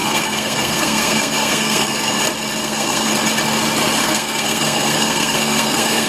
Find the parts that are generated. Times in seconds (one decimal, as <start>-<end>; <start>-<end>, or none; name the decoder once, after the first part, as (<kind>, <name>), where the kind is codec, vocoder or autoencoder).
0.0-2.2 (codec, SNAC); 2.6-3.1; 4.0-6.1